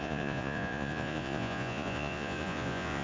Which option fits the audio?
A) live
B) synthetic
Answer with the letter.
B